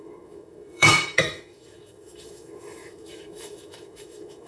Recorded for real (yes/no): no